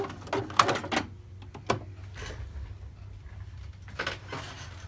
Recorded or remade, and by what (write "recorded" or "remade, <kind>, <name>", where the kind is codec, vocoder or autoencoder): recorded